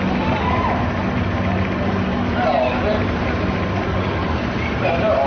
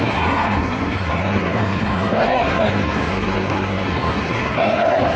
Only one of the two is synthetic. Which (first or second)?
second